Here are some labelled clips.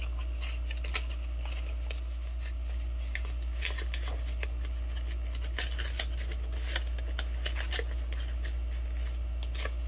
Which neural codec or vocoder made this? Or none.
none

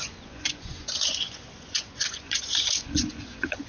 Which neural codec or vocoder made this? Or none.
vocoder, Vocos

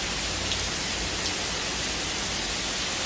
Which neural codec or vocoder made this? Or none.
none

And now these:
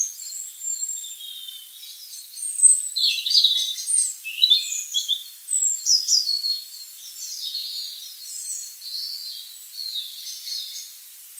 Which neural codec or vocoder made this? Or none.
none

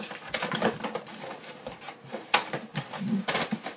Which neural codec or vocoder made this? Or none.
none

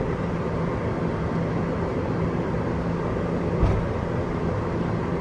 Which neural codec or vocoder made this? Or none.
none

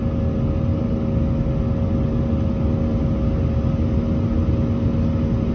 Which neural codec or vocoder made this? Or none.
none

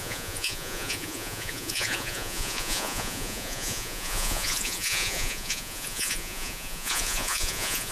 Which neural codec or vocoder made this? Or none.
vocoder, Vocos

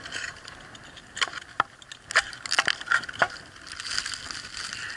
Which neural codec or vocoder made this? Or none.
none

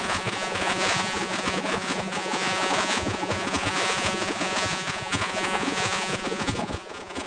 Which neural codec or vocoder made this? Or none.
vocoder, Vocos